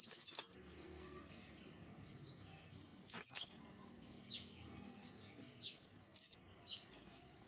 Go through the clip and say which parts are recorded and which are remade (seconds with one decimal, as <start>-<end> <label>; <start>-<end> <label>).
0.0-7.5 remade